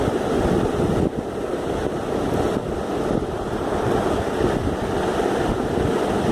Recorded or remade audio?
recorded